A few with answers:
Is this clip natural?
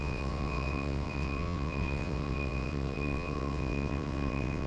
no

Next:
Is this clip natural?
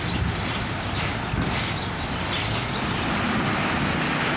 yes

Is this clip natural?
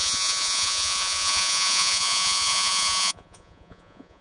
no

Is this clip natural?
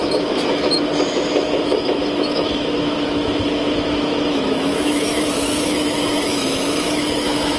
no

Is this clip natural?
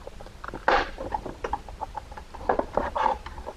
yes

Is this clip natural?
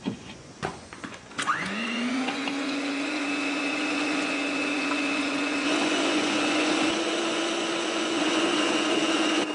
no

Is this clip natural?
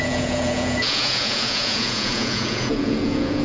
no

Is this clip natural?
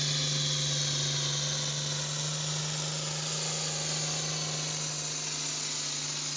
yes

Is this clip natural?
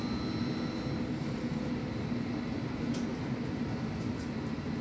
yes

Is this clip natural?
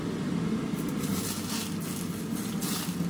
yes